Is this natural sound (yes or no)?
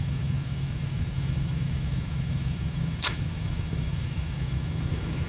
no